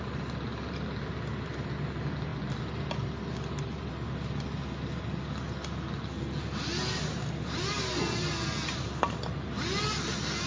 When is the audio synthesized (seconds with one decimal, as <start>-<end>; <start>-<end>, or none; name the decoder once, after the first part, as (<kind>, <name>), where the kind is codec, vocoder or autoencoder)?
none